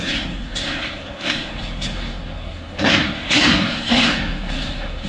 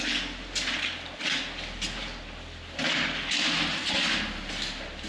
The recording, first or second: second